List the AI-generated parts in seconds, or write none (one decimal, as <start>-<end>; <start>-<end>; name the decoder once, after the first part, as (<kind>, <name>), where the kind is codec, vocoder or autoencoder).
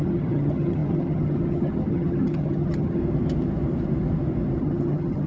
0.0-3.0 (vocoder, HiFi-GAN); 4.6-5.3